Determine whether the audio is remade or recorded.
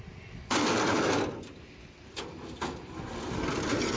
recorded